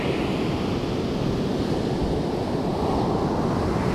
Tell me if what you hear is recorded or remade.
recorded